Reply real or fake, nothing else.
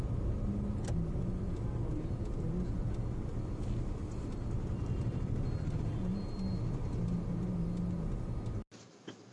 real